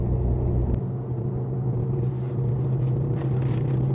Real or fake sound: real